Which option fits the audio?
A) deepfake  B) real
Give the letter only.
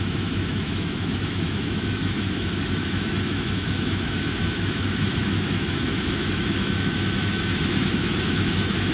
A